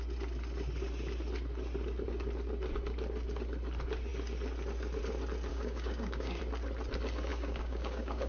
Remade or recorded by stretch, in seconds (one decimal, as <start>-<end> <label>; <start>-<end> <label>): 0.0-5.5 recorded; 5.5-6.4 remade; 6.4-7.3 recorded; 7.3-8.3 remade